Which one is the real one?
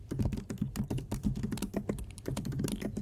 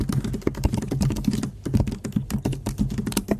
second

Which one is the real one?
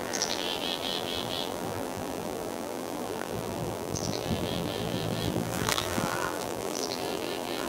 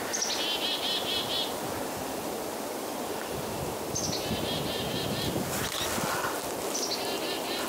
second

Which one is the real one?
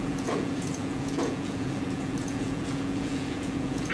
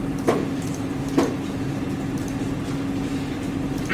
second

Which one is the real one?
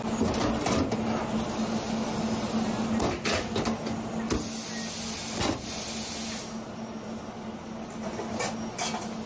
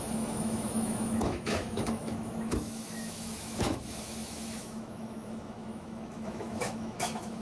first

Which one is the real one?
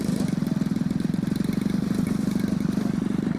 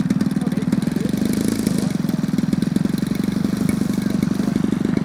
second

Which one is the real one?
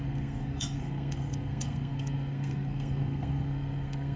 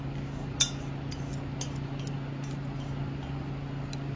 second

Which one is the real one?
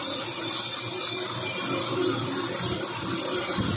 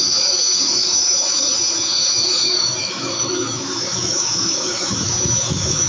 first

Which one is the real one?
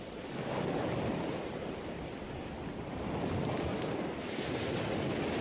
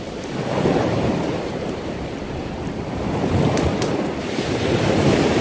first